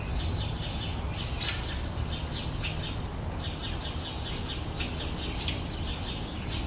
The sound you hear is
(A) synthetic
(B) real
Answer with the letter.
B